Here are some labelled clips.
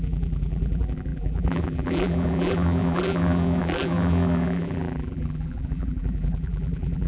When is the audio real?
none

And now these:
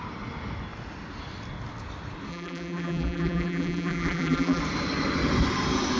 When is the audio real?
0.0-2.3; 4.6-6.0

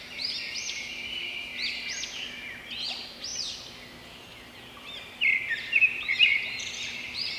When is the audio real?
1.5-2.7; 3.3-6.0

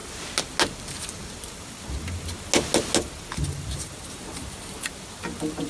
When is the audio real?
0.0-5.7

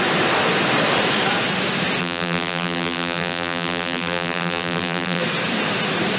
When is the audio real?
0.0-2.0; 5.2-6.2

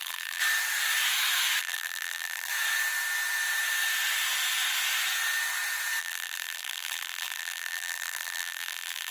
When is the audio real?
0.4-1.6; 2.5-6.0